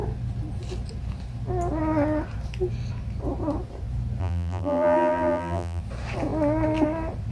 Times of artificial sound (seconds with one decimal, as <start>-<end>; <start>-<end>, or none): 4.2-5.8